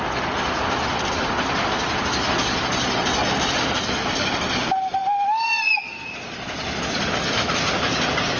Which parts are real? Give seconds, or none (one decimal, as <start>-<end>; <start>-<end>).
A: 0.0-8.4